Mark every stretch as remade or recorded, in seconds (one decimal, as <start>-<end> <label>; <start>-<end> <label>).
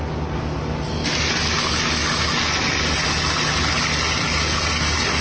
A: 0.0-5.2 recorded